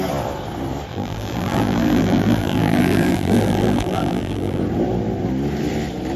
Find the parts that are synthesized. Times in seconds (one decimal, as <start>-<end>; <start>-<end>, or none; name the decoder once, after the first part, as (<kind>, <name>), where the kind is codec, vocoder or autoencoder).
0.9-4.6 (vocoder, BigVGAN v2)